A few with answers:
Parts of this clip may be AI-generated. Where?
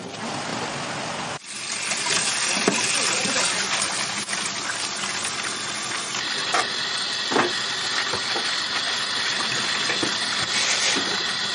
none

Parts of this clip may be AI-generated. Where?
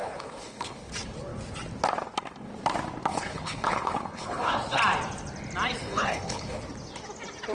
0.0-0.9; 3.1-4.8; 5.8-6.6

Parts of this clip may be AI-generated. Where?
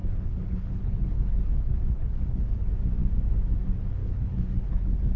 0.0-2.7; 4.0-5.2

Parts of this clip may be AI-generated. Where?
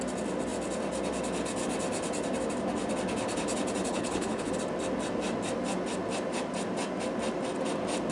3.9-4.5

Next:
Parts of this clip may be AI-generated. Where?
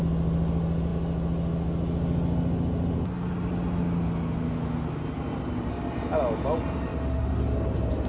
none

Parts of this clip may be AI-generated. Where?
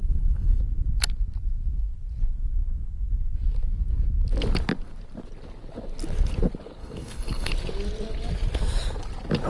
0.0-0.6; 6.8-7.5